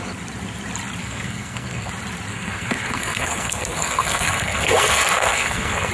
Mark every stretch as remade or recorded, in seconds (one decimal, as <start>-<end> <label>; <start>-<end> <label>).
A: 0.0-1.0 recorded; 1.0-1.9 remade; 1.9-2.3 recorded; 2.3-5.9 remade